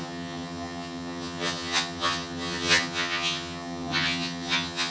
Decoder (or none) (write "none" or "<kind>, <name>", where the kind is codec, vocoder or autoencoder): vocoder, HiFi-GAN